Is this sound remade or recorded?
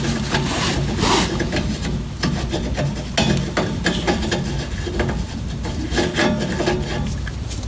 recorded